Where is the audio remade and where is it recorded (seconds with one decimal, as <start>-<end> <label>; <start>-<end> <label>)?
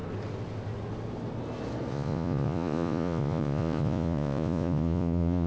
0.0-1.9 recorded; 1.9-5.5 remade